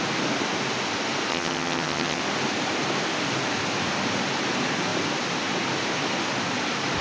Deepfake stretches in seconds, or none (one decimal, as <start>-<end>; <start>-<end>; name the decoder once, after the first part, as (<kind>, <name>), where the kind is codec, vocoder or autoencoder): 1.3-2.2 (vocoder, HiFi-GAN)